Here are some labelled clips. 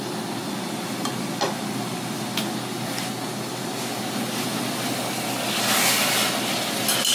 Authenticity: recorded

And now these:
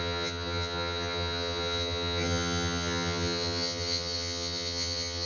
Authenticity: remade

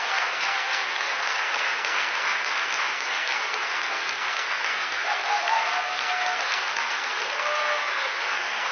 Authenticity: remade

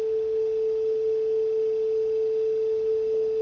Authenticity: recorded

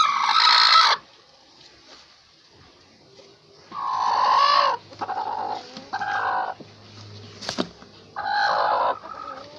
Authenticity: recorded